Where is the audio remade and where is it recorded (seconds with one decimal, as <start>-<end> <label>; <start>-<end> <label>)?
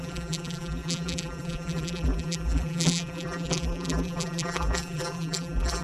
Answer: 0.0-5.8 remade